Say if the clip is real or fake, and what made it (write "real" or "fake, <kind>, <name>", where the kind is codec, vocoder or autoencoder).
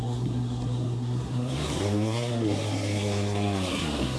fake, codec, SNAC